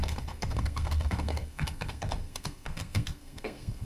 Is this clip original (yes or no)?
no